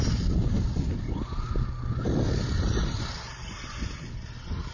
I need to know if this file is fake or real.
real